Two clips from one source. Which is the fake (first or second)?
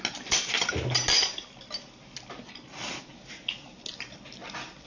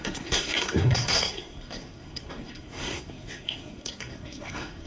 second